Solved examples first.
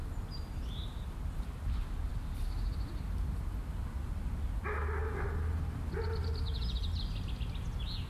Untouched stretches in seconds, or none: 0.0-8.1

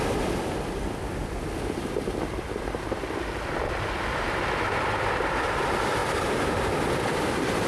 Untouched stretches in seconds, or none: 0.0-7.7

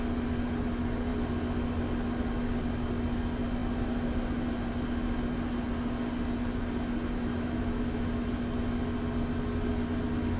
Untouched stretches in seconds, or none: 0.0-7.3; 8.1-10.4